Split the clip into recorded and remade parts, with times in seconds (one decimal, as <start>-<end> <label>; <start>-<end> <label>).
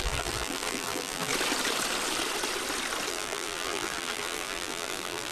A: 0.0-1.3 remade; 1.3-3.1 recorded; 3.1-5.3 remade